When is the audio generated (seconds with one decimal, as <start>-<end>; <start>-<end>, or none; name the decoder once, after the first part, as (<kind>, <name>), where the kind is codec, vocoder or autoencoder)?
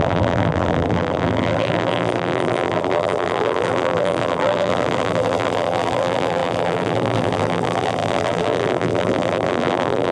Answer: 0.0-10.1 (vocoder, BigVGAN v2)